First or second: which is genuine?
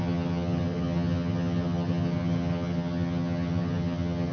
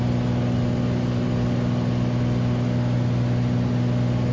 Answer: second